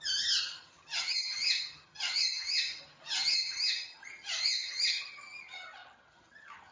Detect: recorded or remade remade